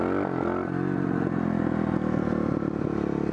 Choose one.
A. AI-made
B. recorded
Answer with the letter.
B